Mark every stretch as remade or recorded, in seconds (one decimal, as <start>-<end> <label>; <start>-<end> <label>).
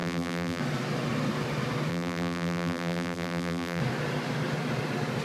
0.0-0.6 remade; 0.6-1.9 recorded; 1.9-3.8 remade; 3.8-5.2 recorded